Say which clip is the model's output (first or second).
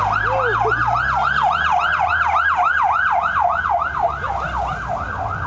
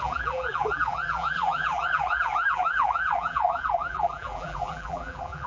second